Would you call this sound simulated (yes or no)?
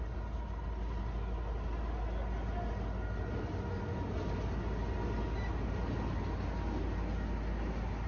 no